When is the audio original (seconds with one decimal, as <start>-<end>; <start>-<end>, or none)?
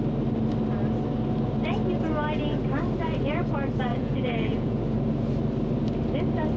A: 0.0-3.9; 4.8-6.6